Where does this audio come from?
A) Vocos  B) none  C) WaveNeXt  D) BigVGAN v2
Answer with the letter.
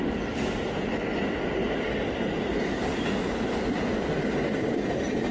B